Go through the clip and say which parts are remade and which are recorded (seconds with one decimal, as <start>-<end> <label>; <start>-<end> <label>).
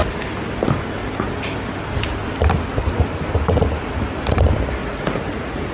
0.0-4.8 recorded; 4.8-5.7 remade